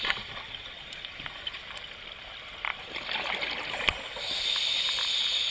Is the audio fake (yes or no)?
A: no